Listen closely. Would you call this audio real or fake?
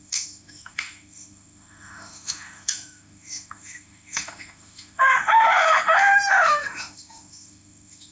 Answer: fake